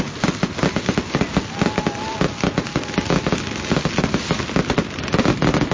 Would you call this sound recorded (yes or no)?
yes